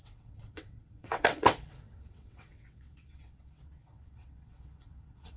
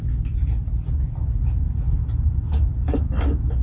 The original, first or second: second